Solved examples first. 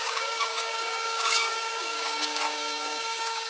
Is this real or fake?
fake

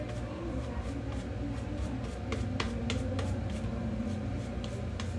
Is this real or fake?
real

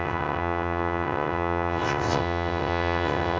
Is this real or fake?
fake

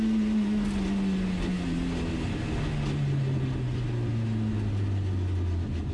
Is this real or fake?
real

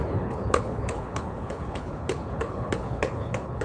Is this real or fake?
fake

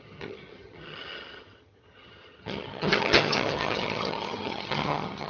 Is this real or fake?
fake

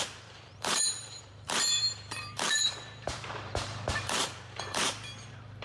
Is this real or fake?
fake